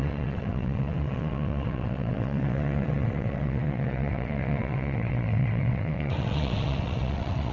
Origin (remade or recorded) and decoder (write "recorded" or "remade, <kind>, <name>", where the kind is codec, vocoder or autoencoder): remade, vocoder, WaveNeXt